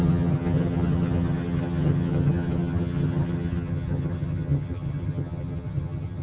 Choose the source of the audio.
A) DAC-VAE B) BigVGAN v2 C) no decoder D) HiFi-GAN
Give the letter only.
D